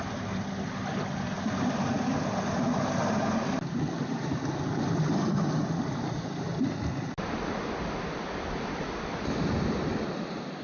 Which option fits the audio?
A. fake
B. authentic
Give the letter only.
B